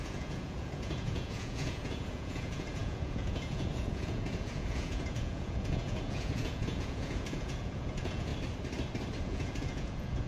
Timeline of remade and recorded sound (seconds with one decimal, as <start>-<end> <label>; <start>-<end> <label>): 0.0-8.3 remade; 8.3-9.2 recorded; 9.2-10.3 remade